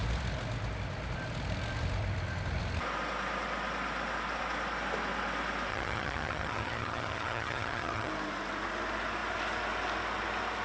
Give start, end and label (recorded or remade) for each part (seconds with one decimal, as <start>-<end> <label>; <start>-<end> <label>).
0.0-5.7 recorded; 5.7-8.1 remade; 8.1-10.6 recorded